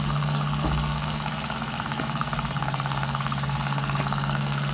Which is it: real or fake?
fake